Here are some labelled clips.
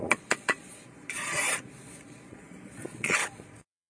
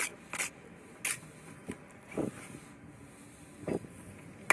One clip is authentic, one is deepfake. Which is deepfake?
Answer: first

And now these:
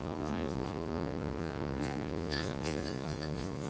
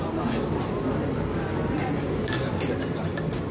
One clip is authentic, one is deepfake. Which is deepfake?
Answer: first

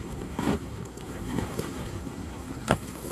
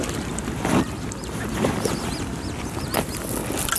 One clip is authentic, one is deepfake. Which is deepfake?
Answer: first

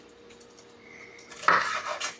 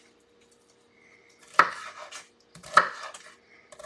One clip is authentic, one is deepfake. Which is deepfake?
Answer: second